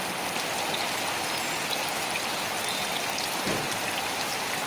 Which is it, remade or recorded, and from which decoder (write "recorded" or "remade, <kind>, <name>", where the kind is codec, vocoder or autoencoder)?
recorded